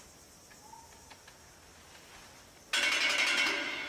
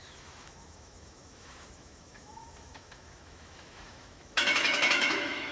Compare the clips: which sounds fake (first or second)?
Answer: second